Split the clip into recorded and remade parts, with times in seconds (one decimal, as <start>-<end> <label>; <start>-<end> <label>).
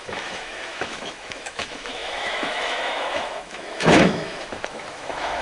0.0-5.4 remade